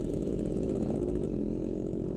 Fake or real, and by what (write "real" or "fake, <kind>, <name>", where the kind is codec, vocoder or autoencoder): fake, autoencoder, DAC-VAE